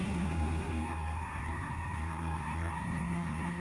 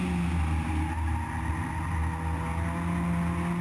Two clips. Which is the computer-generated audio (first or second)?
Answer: first